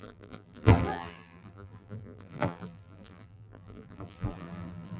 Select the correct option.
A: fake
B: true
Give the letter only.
A